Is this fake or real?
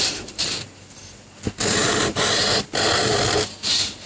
real